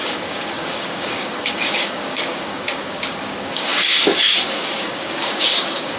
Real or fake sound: fake